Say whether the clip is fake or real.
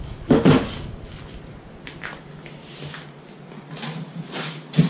real